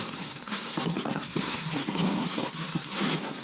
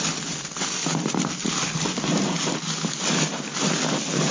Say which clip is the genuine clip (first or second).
second